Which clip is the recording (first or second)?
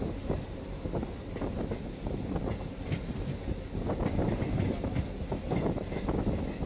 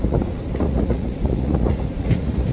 first